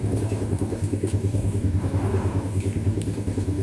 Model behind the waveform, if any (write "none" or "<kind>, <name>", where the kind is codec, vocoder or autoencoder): codec, DAC